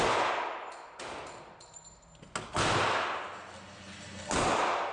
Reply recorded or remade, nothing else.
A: recorded